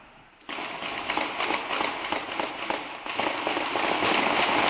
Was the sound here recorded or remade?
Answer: recorded